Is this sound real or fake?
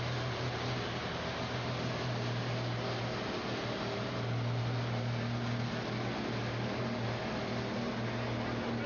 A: real